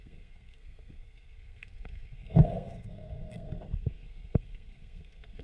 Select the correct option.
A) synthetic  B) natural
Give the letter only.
A